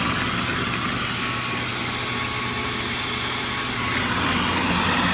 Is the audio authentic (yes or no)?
yes